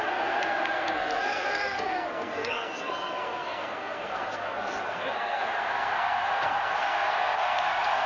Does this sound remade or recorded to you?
remade